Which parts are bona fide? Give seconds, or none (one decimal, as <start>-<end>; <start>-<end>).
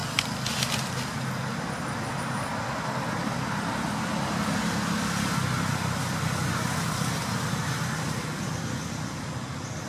0.0-9.9